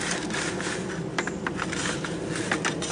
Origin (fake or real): real